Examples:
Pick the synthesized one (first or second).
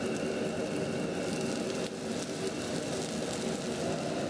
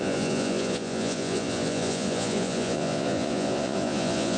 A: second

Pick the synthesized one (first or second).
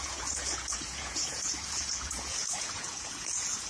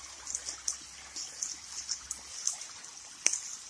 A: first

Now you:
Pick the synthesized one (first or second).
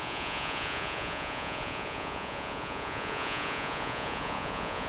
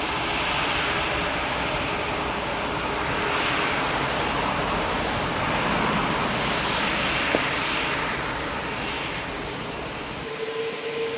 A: first